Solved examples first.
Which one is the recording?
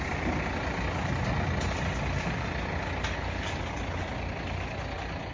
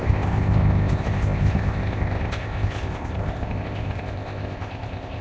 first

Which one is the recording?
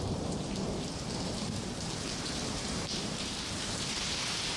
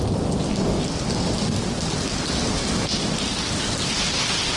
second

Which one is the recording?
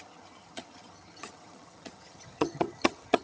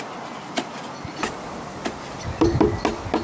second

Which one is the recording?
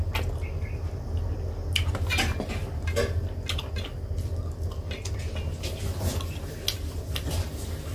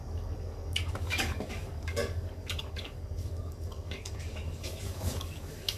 first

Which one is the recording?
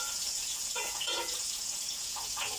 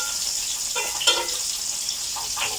second